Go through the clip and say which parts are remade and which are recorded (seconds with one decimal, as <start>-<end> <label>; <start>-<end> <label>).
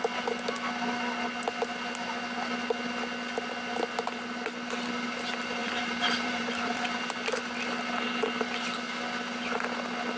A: 0.0-5.6 recorded; 5.6-6.9 remade; 6.9-10.2 recorded